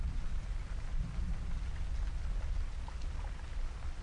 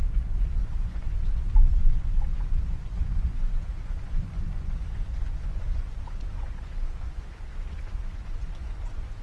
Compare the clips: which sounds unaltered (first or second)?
first